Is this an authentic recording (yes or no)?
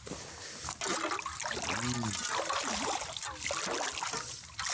yes